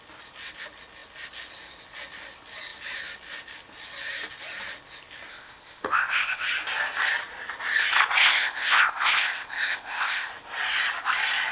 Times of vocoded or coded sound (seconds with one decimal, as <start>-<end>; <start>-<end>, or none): 5.3-6.5; 8.2-10.3